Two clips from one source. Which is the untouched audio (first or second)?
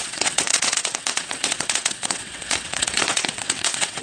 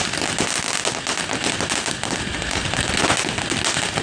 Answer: second